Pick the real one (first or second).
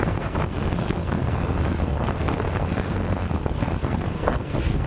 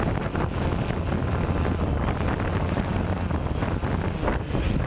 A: second